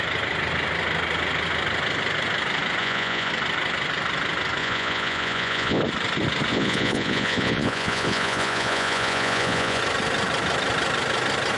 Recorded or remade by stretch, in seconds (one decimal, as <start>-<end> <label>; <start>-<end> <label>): 0.0-2.8 recorded; 2.8-3.3 remade; 3.3-4.6 recorded; 4.6-5.8 remade; 5.8-6.5 recorded; 6.5-9.8 remade; 9.8-11.6 recorded